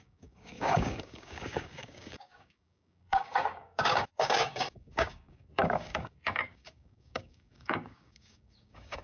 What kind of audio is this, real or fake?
fake